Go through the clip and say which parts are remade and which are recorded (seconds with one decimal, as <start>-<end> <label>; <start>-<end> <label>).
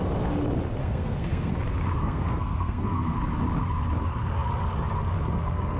0.0-0.8 recorded; 0.8-1.5 remade; 1.5-2.0 recorded; 2.0-3.2 remade; 3.2-5.8 recorded